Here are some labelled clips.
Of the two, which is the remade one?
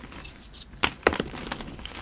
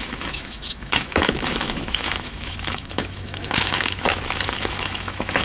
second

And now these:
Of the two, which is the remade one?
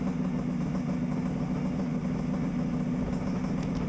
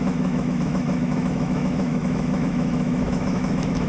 second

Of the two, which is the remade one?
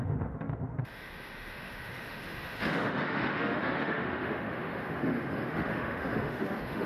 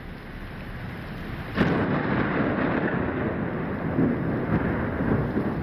first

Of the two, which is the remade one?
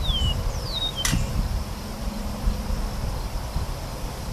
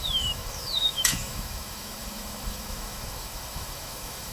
second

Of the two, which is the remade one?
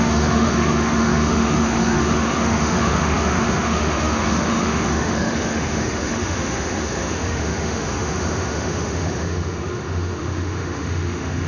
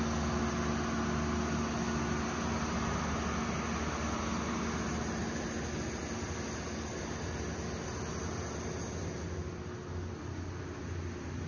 first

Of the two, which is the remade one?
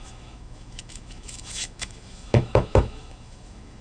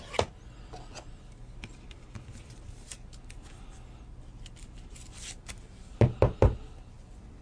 first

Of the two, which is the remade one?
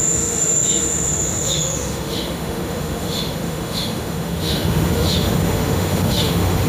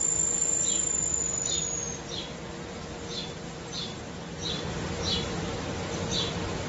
first